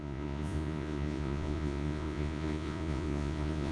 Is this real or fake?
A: fake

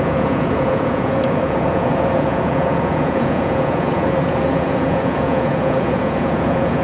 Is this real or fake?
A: fake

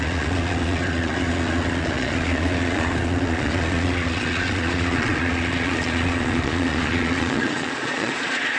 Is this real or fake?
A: fake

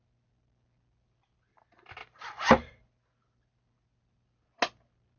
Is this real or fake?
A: real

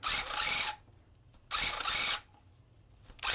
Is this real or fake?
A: real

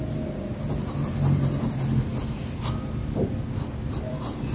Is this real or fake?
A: real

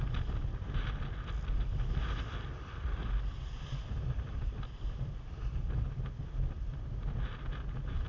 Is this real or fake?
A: real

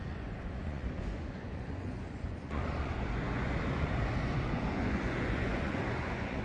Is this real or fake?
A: fake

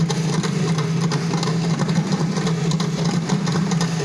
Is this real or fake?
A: real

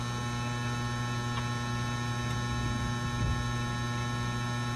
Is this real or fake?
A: real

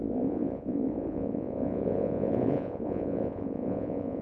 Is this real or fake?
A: fake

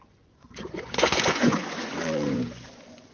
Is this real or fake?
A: fake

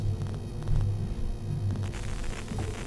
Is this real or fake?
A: real